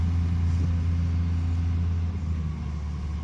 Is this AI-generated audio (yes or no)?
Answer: no